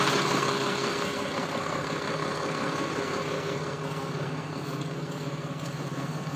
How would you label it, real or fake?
fake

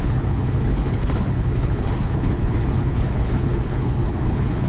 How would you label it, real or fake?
fake